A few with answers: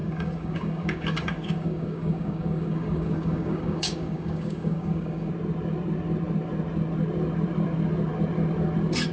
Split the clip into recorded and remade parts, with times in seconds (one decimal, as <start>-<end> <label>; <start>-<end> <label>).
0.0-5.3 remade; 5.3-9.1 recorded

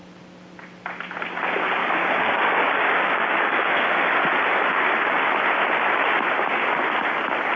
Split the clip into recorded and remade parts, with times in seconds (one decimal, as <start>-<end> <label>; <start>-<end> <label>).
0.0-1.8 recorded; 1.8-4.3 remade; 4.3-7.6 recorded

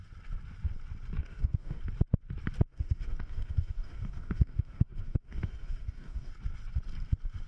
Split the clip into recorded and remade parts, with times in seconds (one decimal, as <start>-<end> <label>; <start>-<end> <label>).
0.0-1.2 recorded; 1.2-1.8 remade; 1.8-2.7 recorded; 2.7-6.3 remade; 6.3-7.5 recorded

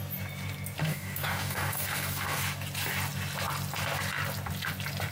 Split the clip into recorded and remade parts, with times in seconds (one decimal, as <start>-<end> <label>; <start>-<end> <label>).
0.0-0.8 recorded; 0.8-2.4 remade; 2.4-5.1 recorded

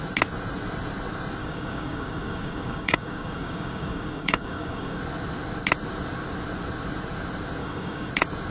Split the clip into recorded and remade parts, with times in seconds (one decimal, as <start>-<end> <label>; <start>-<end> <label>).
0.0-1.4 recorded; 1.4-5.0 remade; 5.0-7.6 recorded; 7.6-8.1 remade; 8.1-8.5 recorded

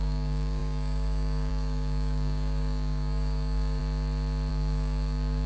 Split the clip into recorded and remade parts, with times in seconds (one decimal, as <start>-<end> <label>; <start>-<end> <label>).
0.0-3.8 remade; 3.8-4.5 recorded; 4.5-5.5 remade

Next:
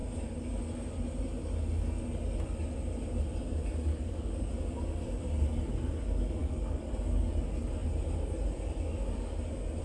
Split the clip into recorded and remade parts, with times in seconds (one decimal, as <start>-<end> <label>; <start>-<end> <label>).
0.0-3.9 recorded; 3.9-4.5 remade; 4.5-6.4 recorded; 6.4-6.9 remade; 6.9-9.8 recorded